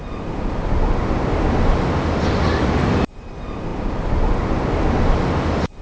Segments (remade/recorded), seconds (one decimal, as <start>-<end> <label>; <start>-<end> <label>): 0.0-5.8 recorded